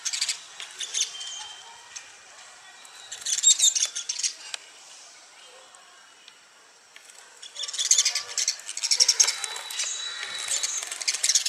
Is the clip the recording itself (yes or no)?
yes